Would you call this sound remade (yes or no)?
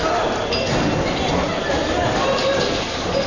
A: no